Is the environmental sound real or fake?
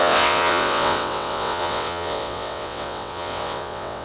fake